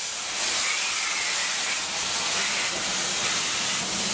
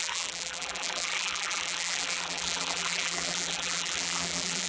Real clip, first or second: first